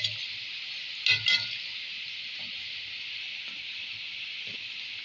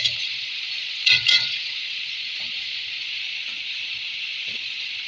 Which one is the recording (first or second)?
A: first